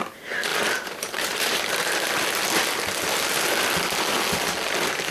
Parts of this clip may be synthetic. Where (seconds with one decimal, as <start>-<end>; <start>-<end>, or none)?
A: 0.5-1.6